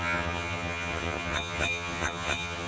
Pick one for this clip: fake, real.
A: fake